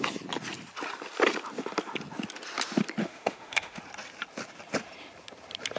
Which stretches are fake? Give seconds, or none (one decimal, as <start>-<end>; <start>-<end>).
3.0-3.8